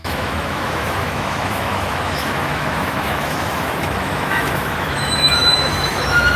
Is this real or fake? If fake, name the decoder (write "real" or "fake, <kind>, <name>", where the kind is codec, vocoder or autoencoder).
fake, autoencoder, DAC-VAE